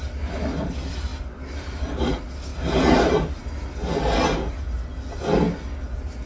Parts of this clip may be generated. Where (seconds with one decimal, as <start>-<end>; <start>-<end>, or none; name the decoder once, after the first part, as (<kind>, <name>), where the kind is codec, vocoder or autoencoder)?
none